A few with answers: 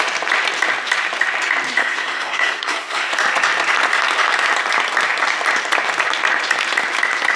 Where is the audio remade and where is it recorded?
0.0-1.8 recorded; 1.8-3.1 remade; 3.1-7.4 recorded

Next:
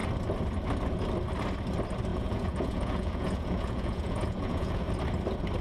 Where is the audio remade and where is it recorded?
0.0-2.1 recorded; 2.1-4.9 remade; 4.9-5.6 recorded

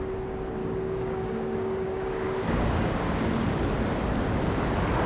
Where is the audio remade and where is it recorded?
0.0-0.6 recorded; 0.6-3.3 remade; 3.3-5.1 recorded